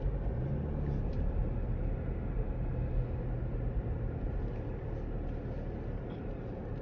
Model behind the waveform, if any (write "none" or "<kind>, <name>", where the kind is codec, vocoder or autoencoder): none